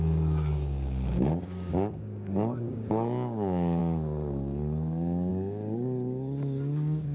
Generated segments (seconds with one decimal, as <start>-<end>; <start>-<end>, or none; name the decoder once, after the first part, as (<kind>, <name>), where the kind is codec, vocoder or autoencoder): 0.0-7.1 (codec, DAC)